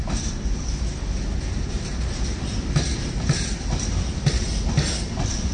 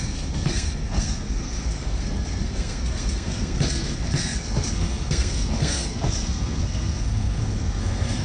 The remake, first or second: second